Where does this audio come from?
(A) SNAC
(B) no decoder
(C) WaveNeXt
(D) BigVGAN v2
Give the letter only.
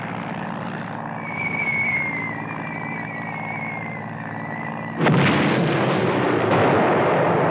B